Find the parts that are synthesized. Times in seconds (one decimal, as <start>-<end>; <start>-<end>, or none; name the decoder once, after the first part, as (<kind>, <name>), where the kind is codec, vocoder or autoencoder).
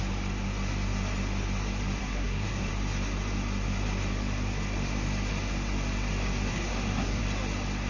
2.0-2.7 (codec, SNAC); 6.5-7.2